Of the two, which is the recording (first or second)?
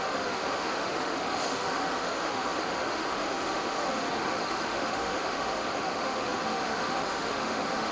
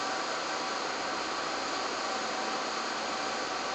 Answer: second